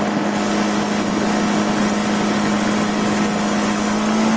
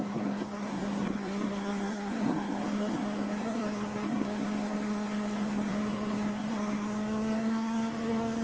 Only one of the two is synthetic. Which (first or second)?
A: second